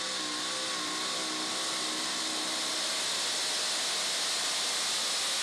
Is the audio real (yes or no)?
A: yes